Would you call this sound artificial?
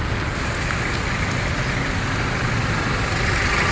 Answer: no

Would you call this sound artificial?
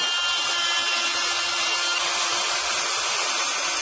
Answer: no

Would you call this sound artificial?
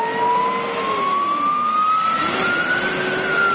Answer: no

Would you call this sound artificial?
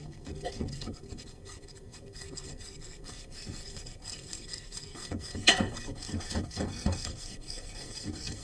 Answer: yes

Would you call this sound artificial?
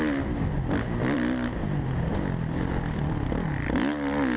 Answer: no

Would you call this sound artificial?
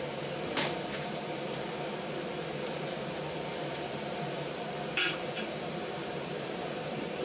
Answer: yes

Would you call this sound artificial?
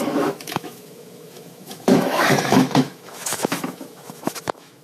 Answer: yes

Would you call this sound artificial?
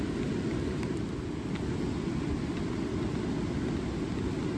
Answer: no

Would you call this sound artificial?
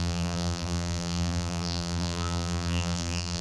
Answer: yes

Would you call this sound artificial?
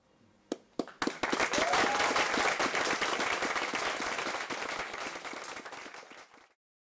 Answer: no